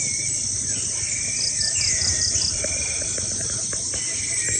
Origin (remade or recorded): recorded